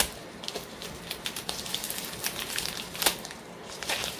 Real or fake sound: fake